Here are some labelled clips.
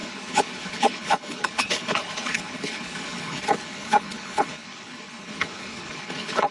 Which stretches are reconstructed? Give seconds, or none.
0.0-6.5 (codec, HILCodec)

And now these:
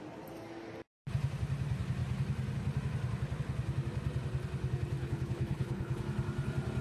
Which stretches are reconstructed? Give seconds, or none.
5.0-6.0 (codec, HILCodec)